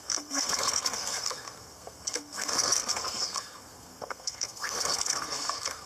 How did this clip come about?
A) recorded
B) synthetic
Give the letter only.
B